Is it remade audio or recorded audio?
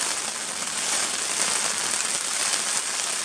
recorded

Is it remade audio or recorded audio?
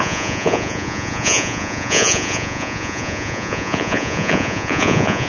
remade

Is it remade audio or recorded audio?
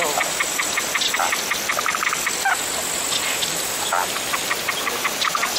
remade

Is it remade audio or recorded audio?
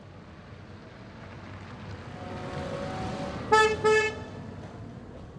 recorded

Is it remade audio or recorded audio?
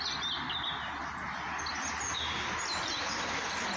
recorded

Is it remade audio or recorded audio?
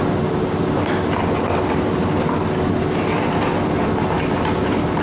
recorded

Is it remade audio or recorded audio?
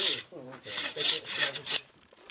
remade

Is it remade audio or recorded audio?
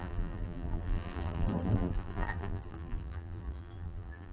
remade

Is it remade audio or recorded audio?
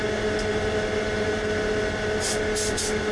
recorded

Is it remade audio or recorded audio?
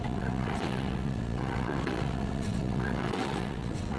remade